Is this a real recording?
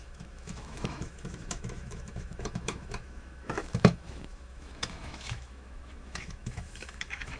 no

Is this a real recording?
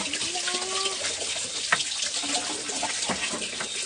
yes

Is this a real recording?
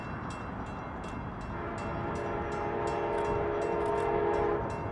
yes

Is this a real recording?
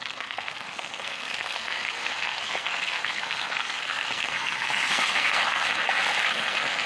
no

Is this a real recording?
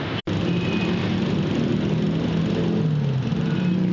yes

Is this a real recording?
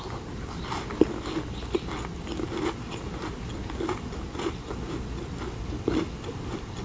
yes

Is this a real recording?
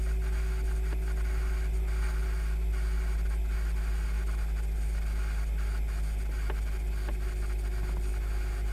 yes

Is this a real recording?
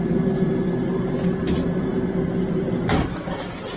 yes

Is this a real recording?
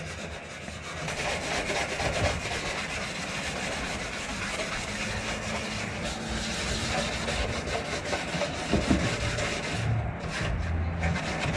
yes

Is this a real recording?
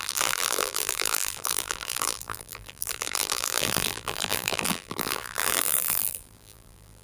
no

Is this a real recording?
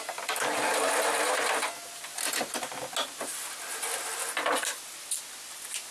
yes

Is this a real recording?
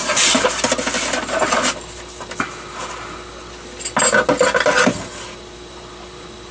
yes